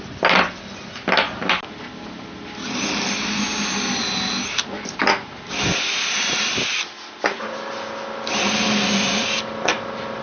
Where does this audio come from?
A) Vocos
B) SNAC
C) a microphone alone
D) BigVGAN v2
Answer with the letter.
C